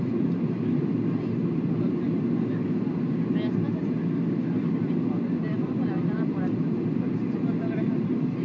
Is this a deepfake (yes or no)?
no